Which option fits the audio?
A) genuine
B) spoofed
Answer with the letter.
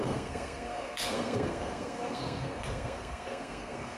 B